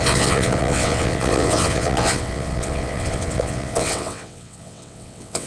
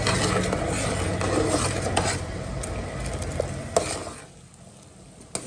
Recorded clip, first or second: second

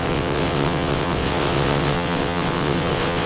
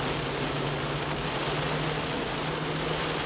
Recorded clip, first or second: second